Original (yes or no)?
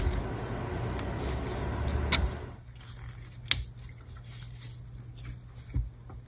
yes